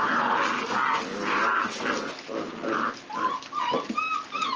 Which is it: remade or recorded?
recorded